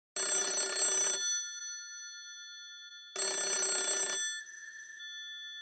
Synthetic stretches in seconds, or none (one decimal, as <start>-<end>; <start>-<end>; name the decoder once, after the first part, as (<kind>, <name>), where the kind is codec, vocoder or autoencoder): 4.4-5.0 (vocoder, HiFi-GAN)